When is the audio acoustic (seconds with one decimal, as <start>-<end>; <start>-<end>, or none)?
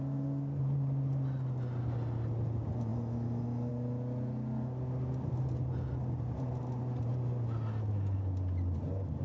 0.0-9.2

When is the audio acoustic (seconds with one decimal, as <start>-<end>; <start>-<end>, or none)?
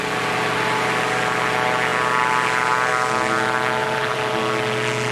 0.0-3.8; 4.4-5.1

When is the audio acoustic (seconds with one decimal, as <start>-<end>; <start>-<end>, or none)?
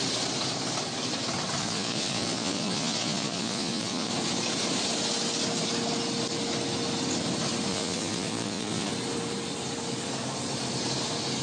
0.0-1.6; 4.1-7.7; 8.9-11.4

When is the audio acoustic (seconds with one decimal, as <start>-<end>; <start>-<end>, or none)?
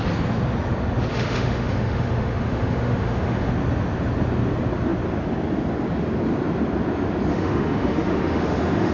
0.0-1.1; 3.5-7.3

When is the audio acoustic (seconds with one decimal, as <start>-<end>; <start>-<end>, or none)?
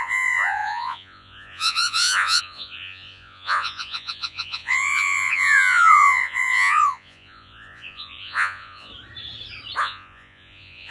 8.9-9.8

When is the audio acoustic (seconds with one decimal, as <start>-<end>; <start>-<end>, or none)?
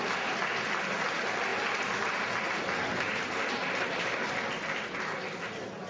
0.0-1.5; 5.0-5.9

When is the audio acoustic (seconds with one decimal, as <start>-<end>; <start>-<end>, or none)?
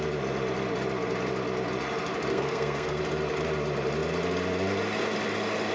0.0-2.3; 3.0-5.7